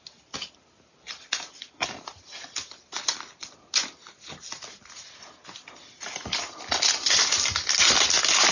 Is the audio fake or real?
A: real